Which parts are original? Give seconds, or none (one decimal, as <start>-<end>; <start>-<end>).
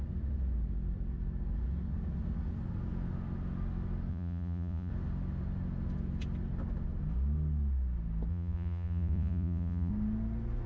0.0-4.1; 4.9-8.3; 9.9-10.7